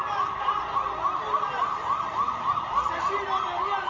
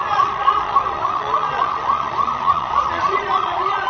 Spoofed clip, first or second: second